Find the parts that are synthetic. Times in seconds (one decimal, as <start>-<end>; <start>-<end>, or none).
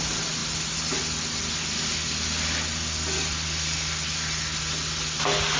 none